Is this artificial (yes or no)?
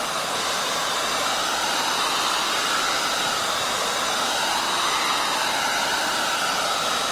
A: no